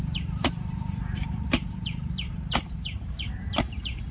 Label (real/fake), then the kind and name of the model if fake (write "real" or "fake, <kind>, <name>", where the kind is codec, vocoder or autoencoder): fake, vocoder, BigVGAN v2